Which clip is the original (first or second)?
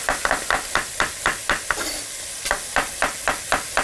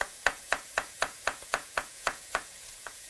first